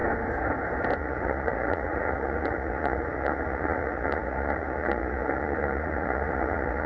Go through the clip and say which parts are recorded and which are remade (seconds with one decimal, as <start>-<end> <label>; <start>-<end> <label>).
0.0-1.0 recorded; 1.0-6.9 remade